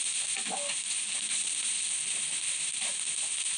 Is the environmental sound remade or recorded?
recorded